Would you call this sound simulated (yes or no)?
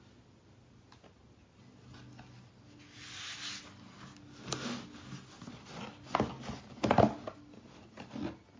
no